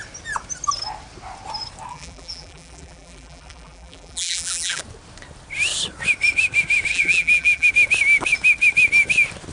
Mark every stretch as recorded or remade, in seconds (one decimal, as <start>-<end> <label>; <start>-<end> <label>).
0.0-1.9 recorded; 1.9-4.8 remade; 4.8-6.9 recorded; 6.9-7.7 remade; 7.7-9.5 recorded